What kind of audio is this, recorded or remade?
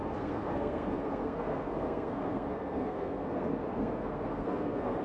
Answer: remade